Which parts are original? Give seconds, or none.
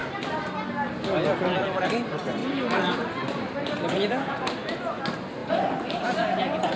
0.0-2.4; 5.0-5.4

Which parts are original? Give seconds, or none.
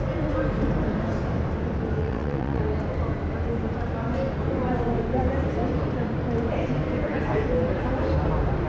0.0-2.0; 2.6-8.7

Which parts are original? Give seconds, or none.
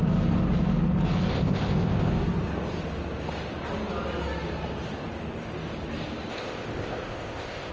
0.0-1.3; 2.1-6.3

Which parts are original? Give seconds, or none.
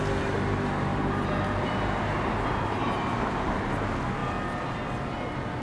0.0-0.9; 3.7-5.6